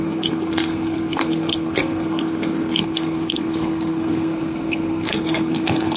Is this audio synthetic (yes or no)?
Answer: yes